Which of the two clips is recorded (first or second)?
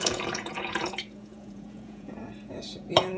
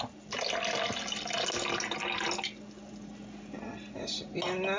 second